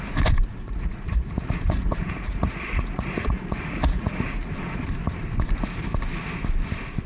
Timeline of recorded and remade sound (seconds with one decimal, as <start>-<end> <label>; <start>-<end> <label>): 0.0-0.5 recorded; 0.5-4.8 remade; 4.8-7.1 recorded